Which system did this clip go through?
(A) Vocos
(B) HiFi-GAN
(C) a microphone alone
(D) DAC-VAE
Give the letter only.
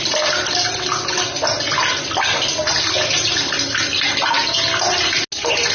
C